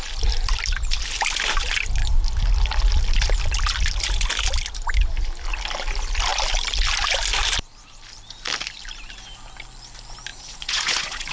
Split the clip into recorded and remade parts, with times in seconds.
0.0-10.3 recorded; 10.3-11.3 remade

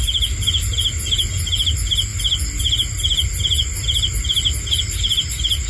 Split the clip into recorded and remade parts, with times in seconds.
0.0-5.7 recorded

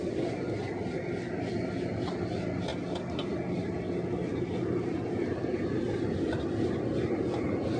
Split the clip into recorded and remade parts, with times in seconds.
0.0-7.8 recorded

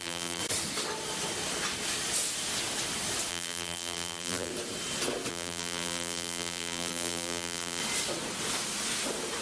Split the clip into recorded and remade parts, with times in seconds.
0.0-0.4 remade; 0.4-3.3 recorded; 3.3-4.5 remade; 4.5-5.3 recorded; 5.3-7.8 remade; 7.8-9.4 recorded